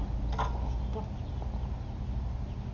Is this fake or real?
real